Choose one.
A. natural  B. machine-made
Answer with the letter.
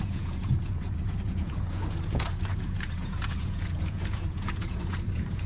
B